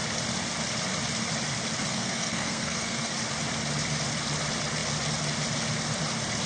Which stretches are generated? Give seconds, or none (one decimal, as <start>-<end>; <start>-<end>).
1.9-3.1